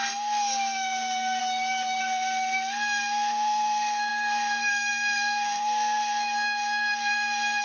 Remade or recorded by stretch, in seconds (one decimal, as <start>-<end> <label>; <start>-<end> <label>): 0.0-1.4 remade; 1.4-2.0 recorded; 2.0-7.6 remade